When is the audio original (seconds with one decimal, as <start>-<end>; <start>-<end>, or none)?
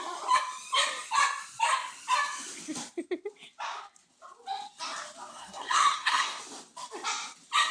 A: 0.0-5.3; 6.4-7.7